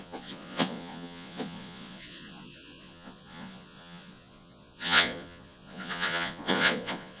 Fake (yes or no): yes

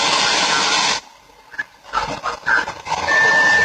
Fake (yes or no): no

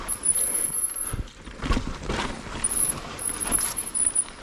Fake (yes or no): no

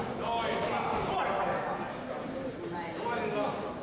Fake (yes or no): no